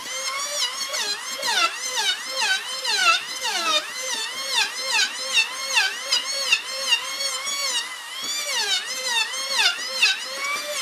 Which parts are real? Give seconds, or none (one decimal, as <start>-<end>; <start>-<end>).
7.6-8.9